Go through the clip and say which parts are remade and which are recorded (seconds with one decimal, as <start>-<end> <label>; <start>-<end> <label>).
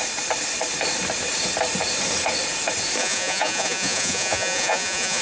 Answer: 0.0-3.0 recorded; 3.0-5.2 remade